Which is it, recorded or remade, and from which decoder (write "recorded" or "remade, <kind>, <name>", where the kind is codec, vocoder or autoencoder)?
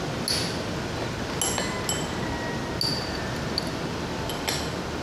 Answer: recorded